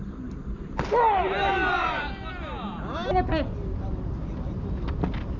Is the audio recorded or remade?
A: recorded